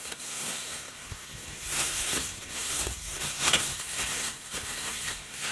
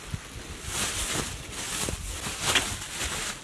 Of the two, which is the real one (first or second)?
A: second